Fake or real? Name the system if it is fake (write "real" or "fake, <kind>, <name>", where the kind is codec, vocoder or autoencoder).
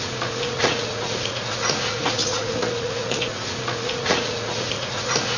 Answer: fake, vocoder, Vocos